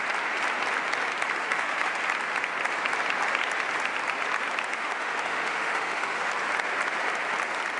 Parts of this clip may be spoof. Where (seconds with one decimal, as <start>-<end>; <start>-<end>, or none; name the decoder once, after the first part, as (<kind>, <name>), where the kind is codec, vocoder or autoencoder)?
1.4-1.9 (autoencoder, DAC-VAE); 4.7-6.3